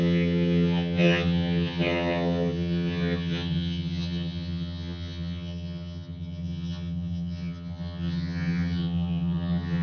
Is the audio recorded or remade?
remade